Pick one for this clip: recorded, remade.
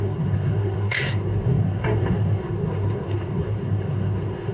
remade